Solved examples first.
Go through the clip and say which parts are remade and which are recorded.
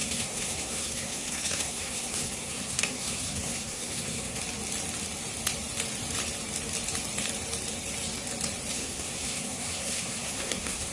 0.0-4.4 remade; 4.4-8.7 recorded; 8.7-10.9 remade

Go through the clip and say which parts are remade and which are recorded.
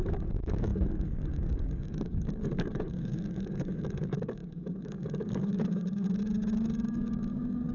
0.0-7.7 remade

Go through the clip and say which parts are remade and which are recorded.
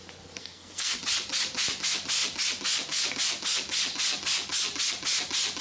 0.0-0.4 recorded; 0.4-1.0 remade; 1.0-5.6 recorded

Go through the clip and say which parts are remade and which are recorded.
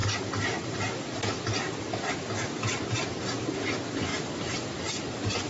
0.0-4.1 recorded; 4.1-5.5 remade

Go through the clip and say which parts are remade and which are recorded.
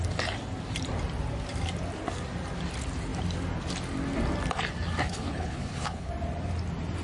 0.0-5.0 recorded; 5.0-6.1 remade; 6.1-7.0 recorded